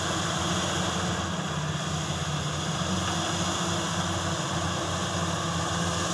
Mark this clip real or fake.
real